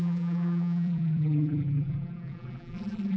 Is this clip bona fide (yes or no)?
no